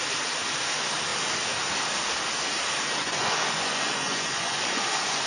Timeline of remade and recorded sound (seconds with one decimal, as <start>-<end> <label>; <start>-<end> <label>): 0.0-3.0 recorded; 3.0-5.3 remade